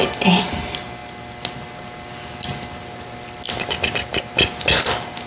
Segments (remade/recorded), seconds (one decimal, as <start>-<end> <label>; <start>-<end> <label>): 0.0-5.3 recorded